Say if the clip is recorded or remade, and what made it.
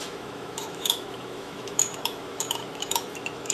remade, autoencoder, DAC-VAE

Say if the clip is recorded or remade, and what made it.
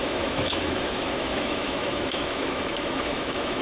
remade, autoencoder, DAC-VAE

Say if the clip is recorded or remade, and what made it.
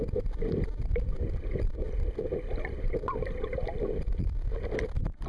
recorded